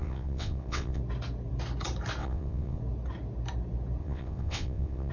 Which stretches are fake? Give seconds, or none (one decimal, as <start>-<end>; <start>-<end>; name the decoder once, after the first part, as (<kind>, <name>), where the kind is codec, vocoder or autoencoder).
0.0-1.0 (vocoder, WaveNeXt); 2.2-2.8; 4.0-5.1